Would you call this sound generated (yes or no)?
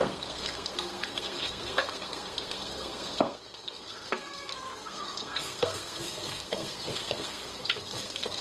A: yes